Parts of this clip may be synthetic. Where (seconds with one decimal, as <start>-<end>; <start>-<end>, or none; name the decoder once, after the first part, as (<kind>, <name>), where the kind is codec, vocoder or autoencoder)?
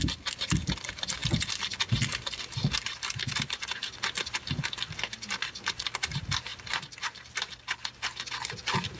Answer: none